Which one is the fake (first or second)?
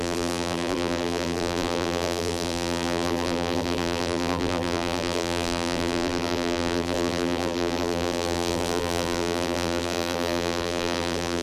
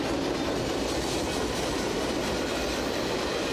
first